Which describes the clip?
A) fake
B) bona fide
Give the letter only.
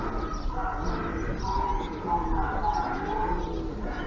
B